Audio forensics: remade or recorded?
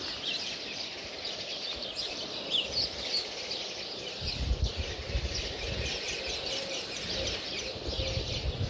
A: recorded